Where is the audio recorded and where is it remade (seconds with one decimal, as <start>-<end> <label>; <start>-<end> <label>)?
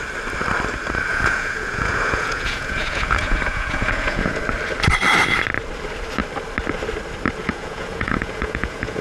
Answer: 0.0-1.1 recorded; 1.1-4.4 remade; 4.4-7.4 recorded; 7.4-9.0 remade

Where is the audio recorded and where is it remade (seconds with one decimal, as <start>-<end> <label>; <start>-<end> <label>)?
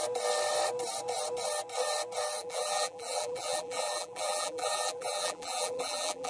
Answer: 0.0-2.4 recorded; 2.4-6.3 remade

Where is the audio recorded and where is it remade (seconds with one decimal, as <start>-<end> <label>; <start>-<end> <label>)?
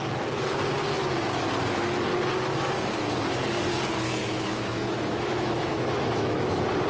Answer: 0.0-4.2 recorded; 4.2-6.5 remade; 6.5-6.9 recorded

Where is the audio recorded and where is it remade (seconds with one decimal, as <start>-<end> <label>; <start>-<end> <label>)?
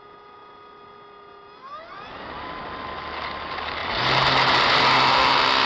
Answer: 0.0-5.7 recorded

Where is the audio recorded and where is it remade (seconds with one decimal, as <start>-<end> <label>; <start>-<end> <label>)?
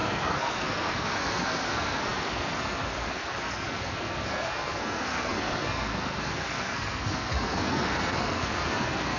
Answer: 0.0-9.2 remade